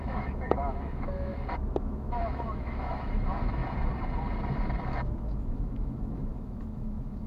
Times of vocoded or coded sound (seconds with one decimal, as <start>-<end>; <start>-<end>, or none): 0.0-1.3; 1.8-3.6; 4.9-7.3